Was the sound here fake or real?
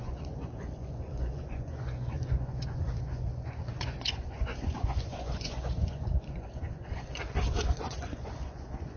fake